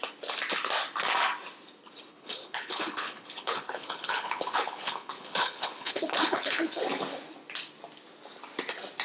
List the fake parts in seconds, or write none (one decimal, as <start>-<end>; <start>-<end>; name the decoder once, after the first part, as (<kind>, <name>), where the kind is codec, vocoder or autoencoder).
2.1-6.8 (codec, HILCodec)